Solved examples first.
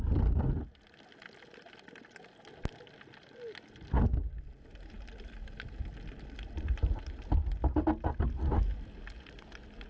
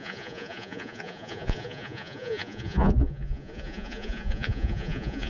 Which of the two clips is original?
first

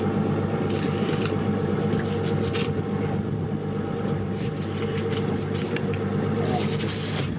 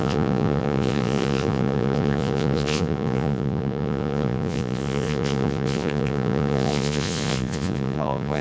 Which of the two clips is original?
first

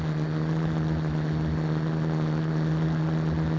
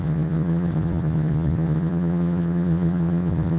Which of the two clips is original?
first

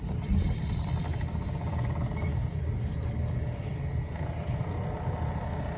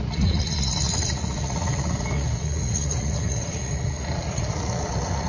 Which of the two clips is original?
first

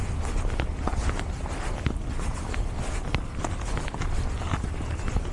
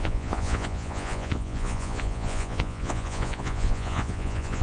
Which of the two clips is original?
first